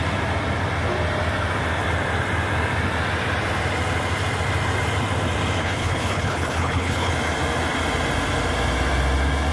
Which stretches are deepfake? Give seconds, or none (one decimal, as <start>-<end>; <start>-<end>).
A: 5.6-7.1